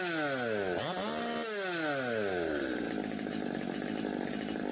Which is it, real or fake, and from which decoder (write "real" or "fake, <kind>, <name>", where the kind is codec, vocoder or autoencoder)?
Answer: real